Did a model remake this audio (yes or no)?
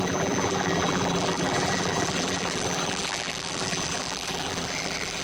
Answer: yes